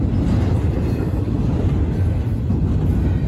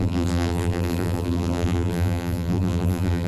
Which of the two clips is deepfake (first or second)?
second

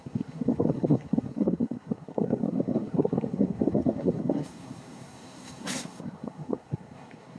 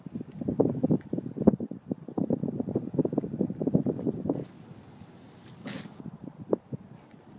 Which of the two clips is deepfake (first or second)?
first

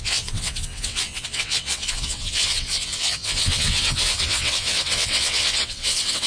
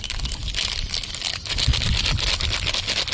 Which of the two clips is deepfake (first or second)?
first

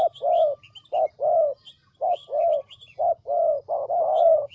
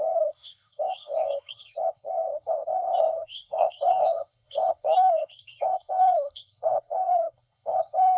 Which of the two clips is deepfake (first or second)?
second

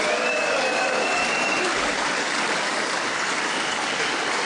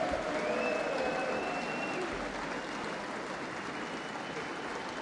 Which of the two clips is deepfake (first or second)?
first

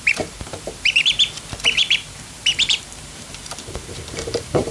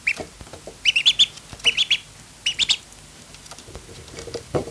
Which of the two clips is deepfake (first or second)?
first